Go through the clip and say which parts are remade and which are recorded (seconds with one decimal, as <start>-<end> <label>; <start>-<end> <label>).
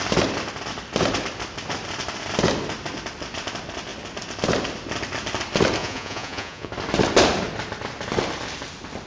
0.0-5.8 recorded; 5.8-6.7 remade; 6.7-9.1 recorded